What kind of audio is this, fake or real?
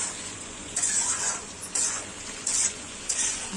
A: fake